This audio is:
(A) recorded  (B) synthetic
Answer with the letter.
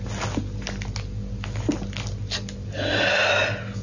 A